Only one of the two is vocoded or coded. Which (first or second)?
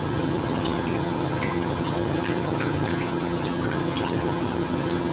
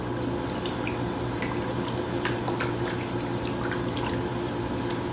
first